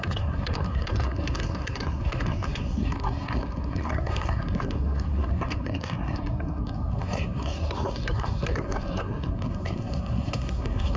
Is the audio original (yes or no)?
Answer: no